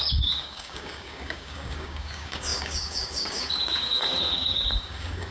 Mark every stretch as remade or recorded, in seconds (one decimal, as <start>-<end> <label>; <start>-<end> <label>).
0.0-5.3 remade